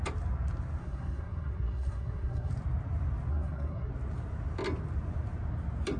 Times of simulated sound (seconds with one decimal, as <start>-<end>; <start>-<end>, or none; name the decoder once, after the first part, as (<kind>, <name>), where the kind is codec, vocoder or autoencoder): 0.8-2.5 (codec, SNAC); 3.3-3.9